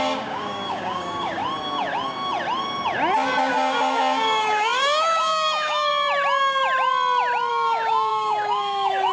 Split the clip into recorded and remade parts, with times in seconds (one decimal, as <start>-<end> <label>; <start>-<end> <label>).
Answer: 0.0-1.4 remade; 1.4-3.5 recorded; 3.5-5.9 remade; 5.9-7.5 recorded; 7.5-9.1 remade